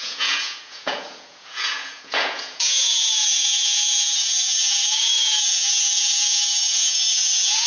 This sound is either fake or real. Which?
fake